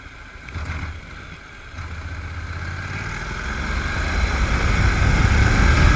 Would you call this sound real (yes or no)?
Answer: yes